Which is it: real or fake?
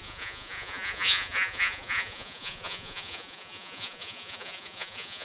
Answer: fake